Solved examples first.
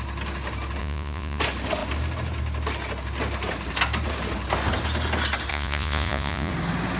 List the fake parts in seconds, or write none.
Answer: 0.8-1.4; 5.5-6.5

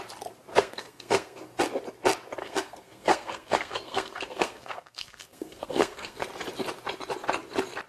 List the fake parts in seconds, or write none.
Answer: 0.5-1.6; 2.4-6.2

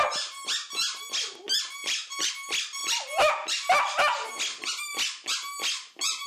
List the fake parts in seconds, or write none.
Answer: 1.8-2.3

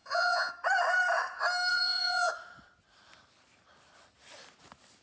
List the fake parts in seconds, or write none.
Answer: 0.0-0.5; 1.7-2.3

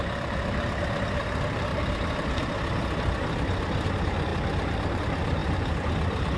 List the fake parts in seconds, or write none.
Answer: 0.0-1.7; 3.9-6.4

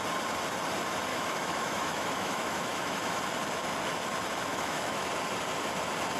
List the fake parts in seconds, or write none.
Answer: 1.1-3.2; 4.5-5.1

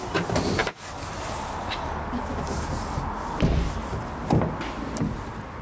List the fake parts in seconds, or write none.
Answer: none